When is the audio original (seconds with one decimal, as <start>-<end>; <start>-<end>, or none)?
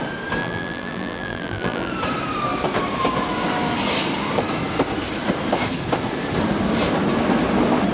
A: 0.0-0.4; 1.9-7.9